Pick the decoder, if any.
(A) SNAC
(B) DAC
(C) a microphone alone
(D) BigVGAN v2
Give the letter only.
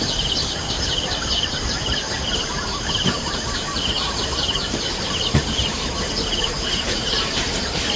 D